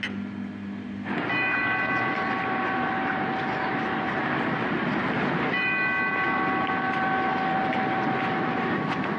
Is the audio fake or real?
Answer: real